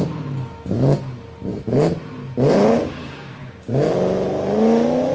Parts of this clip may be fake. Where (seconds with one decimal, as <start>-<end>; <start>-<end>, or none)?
2.8-3.9

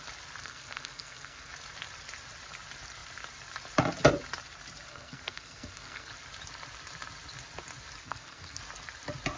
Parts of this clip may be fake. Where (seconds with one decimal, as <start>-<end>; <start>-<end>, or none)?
0.4-1.5; 4.9-6.1; 8.0-8.6

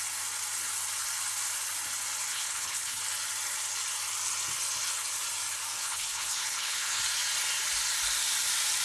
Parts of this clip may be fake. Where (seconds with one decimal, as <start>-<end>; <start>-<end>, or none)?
2.3-3.0; 5.8-7.0

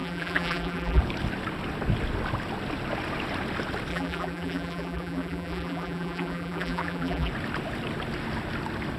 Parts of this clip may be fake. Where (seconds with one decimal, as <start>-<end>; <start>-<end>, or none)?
0.0-1.0; 3.9-7.3

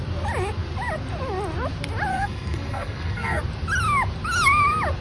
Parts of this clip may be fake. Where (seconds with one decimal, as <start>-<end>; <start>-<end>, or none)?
2.1-3.4

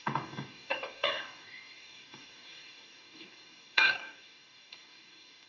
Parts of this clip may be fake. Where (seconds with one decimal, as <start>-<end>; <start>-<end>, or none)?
0.0-5.5

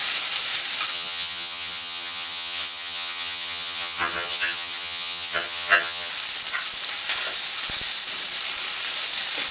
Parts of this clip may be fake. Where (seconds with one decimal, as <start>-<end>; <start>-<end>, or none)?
0.9-6.1

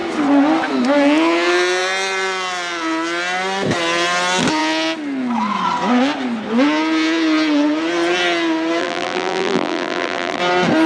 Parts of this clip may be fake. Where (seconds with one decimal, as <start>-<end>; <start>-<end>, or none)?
8.8-10.4